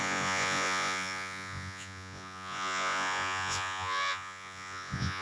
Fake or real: fake